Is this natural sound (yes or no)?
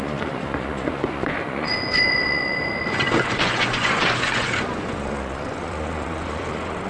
no